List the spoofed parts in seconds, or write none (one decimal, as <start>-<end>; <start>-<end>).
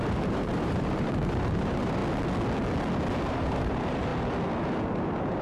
0.0-2.0; 3.3-4.1; 4.7-5.4